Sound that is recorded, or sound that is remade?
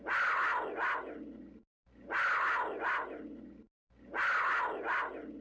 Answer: recorded